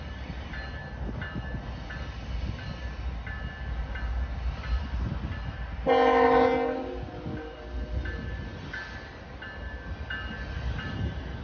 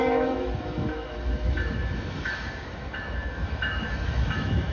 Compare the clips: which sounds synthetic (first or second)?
second